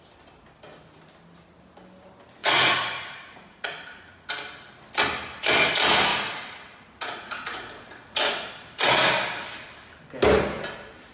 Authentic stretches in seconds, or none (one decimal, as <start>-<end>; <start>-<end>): 0.0-2.4; 4.3-6.1; 8.5-11.1